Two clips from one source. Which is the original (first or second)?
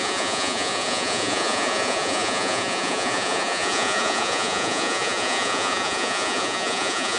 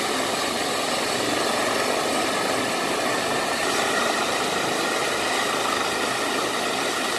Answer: second